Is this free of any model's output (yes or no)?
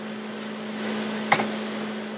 yes